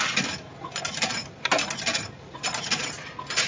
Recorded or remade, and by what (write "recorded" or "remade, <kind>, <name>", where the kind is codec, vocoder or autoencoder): recorded